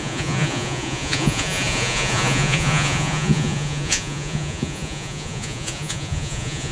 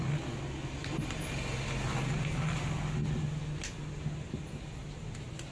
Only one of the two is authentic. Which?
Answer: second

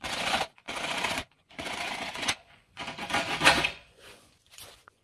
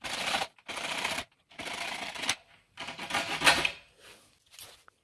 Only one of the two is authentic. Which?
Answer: second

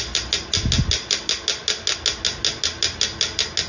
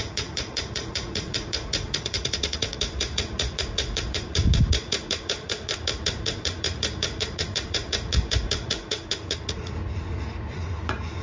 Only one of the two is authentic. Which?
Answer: first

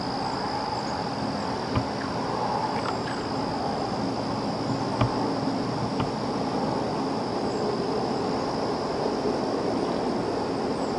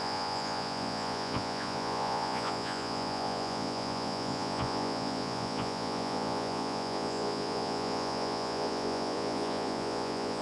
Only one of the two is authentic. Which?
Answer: first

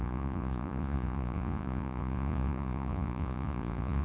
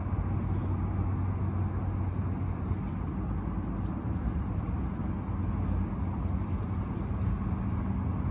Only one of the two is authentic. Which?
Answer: second